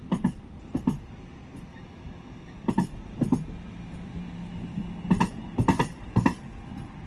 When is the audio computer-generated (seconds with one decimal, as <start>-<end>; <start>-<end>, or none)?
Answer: 1.7-2.7